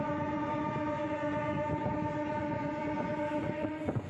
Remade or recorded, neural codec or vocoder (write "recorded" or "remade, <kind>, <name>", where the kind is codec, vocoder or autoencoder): remade, vocoder, Vocos